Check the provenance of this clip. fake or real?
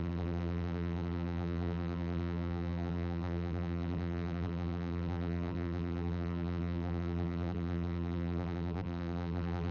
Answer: fake